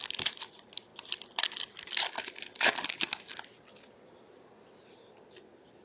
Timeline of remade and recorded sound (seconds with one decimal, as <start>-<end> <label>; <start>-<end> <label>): 0.0-5.8 recorded